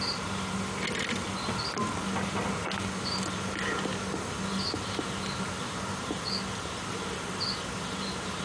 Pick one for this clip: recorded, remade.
recorded